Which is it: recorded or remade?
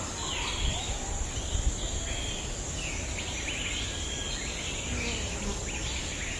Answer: recorded